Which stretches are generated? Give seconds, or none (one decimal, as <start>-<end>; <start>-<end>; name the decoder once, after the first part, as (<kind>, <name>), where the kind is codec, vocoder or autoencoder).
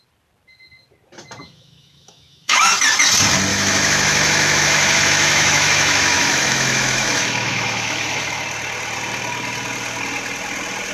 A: 1.4-2.7 (autoencoder, DAC-VAE); 3.5-8.4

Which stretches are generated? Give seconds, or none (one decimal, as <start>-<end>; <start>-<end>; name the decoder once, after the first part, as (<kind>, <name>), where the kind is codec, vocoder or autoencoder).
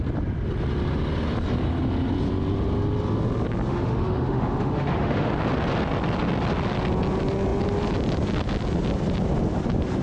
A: 3.7-5.3 (autoencoder, DAC-VAE)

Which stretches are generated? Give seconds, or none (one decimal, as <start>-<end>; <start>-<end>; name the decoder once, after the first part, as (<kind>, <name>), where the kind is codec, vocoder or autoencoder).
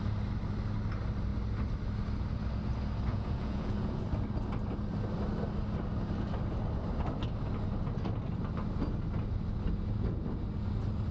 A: 3.1-4.0 (vocoder, Vocos)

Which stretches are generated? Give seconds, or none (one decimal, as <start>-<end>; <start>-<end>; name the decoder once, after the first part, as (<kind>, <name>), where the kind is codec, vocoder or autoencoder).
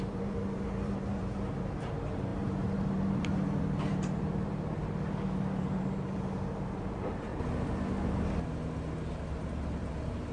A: 0.0-7.3 (vocoder, BigVGAN v2); 9.9-10.3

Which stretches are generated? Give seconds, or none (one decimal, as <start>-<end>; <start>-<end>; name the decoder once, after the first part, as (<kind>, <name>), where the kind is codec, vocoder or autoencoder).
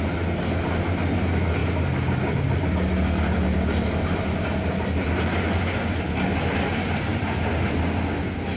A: none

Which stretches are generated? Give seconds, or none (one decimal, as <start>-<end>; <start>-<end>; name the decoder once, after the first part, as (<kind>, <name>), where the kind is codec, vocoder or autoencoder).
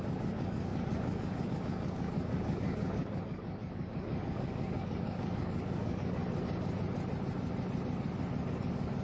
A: 0.0-6.2 (codec, DAC); 8.5-9.0